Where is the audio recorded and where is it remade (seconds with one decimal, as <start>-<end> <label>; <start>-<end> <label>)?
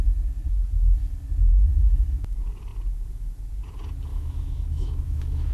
0.0-4.1 recorded; 4.1-5.5 remade